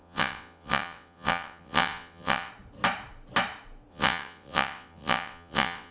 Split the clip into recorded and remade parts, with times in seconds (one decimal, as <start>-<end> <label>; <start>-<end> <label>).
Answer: 0.0-2.5 remade; 2.5-3.9 recorded; 3.9-5.9 remade